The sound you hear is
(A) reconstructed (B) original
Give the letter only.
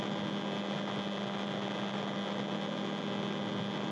B